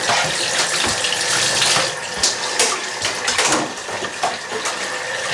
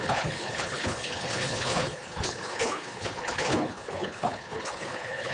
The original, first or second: first